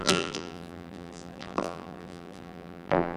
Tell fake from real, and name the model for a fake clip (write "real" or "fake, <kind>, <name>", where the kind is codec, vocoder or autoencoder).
fake, vocoder, BigVGAN v2